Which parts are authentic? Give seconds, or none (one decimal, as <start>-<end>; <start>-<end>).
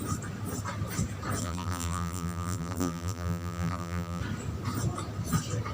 0.0-1.4; 4.2-5.7